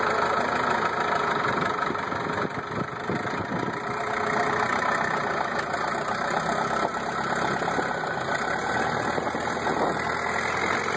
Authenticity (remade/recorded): recorded